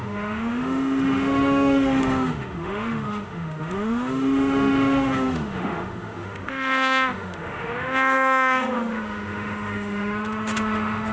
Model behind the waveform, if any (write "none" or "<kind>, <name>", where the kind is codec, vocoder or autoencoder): autoencoder, DAC-VAE